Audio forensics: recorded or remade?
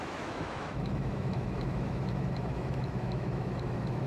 remade